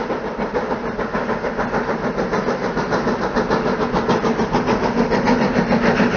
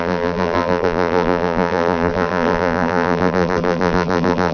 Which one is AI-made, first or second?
second